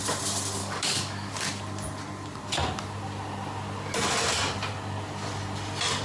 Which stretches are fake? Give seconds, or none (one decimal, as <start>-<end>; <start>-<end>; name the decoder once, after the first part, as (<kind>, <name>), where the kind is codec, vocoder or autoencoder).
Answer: 0.6-1.3 (codec, DAC)